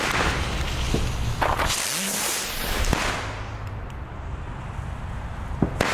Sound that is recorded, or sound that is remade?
recorded